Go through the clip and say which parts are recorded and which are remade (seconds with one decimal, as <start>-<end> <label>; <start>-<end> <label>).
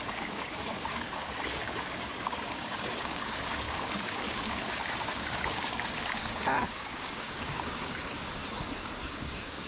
0.0-8.4 remade; 8.4-9.0 recorded; 9.0-9.7 remade